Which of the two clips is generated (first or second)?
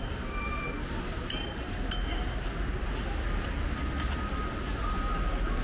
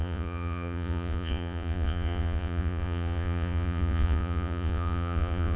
second